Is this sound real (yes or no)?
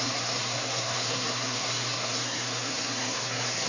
no